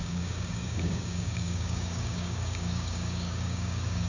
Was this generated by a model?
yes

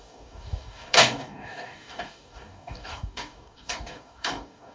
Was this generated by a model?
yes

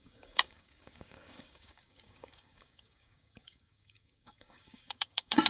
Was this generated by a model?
yes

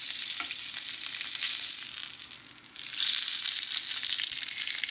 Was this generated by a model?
no